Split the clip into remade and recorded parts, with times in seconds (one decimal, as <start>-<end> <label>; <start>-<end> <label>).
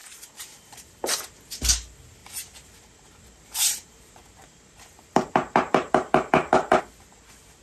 0.0-1.3 remade; 1.3-2.2 recorded; 2.2-6.8 remade; 6.8-7.6 recorded